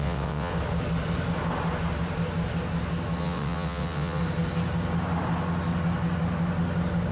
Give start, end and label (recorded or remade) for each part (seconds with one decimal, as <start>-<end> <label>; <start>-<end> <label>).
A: 0.0-0.5 remade; 0.5-3.2 recorded; 3.2-4.2 remade; 4.2-7.1 recorded